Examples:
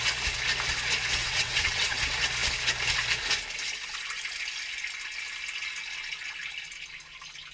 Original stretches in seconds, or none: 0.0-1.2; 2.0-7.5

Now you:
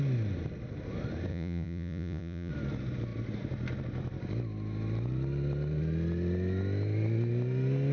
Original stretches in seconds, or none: 0.0-1.3; 2.5-7.9